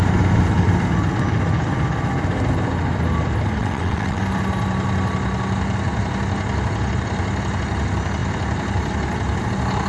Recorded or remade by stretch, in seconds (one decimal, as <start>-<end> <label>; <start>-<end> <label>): 0.0-3.6 recorded; 3.6-4.2 remade; 4.2-9.9 recorded